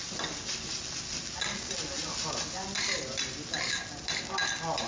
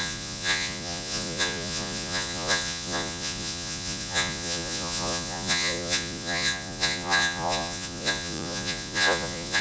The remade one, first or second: second